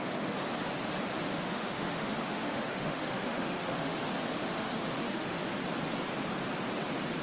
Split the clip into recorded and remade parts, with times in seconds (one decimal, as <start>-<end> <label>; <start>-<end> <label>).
0.0-1.3 recorded; 1.3-4.0 remade; 4.0-4.4 recorded; 4.4-5.4 remade; 5.4-7.2 recorded